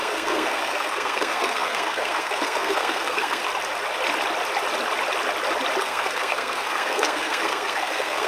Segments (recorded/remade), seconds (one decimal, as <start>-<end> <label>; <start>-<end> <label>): 0.0-3.4 remade; 3.4-5.8 recorded; 5.8-8.3 remade